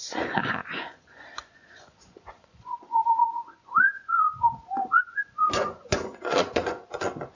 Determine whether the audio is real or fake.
fake